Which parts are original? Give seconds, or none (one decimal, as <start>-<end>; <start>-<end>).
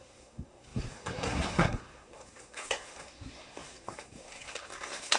none